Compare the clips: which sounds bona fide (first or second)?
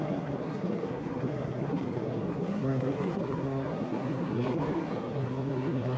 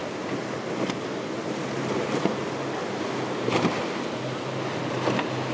second